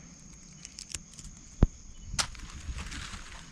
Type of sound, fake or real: real